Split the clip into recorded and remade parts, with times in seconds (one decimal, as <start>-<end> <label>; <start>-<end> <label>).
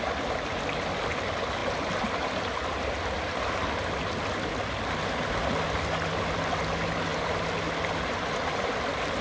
0.0-9.2 recorded